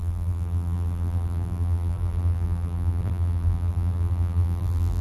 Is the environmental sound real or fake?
fake